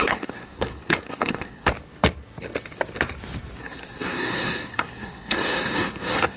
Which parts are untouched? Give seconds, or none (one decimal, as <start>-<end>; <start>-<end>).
1.7-3.6